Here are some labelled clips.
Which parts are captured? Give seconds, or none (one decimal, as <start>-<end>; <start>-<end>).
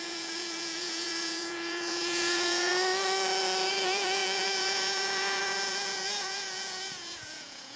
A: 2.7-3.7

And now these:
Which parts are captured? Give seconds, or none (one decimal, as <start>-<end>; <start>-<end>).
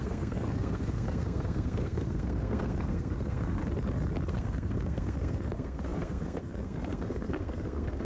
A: 3.6-4.3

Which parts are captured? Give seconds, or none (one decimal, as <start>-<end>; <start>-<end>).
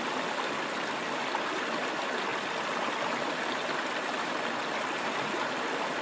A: 0.0-6.0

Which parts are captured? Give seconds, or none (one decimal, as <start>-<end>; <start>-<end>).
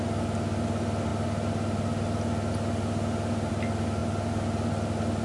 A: 0.0-5.2